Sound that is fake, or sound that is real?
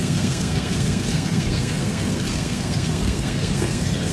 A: fake